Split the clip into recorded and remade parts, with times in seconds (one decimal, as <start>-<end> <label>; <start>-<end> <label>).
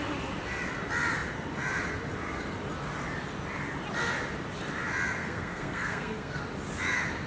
0.0-5.2 recorded; 5.2-6.4 remade; 6.4-7.3 recorded